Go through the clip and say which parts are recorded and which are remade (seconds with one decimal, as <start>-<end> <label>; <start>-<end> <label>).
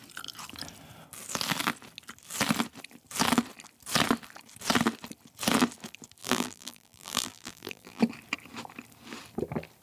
0.0-6.2 recorded; 6.2-8.0 remade; 8.0-9.8 recorded